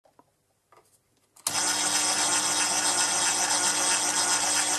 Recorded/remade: recorded